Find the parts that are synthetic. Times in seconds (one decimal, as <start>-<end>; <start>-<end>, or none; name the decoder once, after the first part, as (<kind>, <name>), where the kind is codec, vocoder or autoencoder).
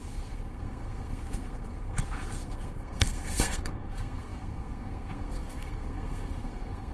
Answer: 0.0-6.9 (codec, SNAC)